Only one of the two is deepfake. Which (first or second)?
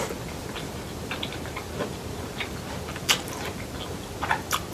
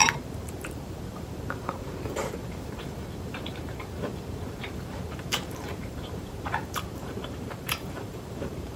second